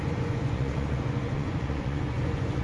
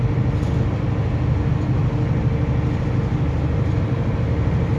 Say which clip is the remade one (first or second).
first